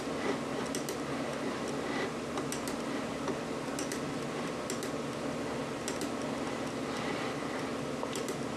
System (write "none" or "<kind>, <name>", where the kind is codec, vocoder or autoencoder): none